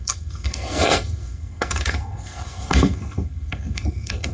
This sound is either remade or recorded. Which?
remade